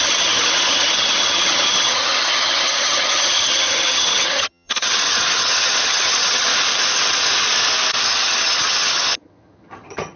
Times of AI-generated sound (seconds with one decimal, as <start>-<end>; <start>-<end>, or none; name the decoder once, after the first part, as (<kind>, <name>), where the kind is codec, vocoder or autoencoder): 0.0-6.5 (vocoder, HiFi-GAN); 8.0-10.2